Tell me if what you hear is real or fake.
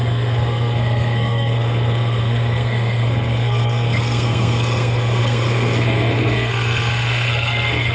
fake